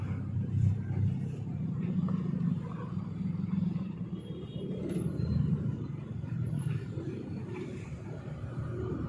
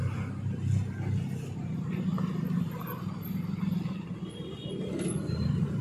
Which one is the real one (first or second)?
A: second